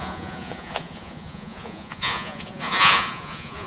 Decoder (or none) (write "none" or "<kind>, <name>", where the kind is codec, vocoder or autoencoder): vocoder, Vocos